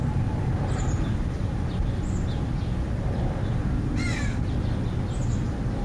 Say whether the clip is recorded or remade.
remade